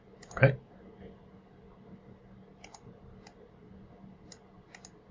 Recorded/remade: recorded